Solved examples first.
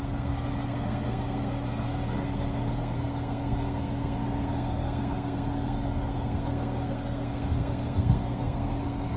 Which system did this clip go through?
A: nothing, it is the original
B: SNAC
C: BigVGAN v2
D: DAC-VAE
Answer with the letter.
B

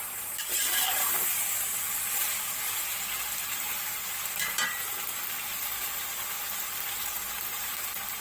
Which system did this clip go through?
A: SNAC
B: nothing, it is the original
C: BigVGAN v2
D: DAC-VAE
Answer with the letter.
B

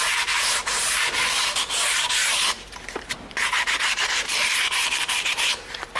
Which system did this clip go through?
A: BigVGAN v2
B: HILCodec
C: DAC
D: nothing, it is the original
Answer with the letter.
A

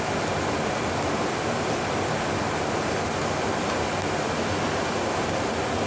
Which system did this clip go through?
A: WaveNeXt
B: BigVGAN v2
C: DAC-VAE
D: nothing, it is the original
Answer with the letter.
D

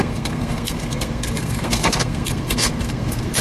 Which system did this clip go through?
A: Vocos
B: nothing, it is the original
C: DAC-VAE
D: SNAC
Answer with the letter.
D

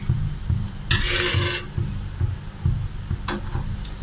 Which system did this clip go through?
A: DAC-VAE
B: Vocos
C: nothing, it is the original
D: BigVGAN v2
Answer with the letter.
C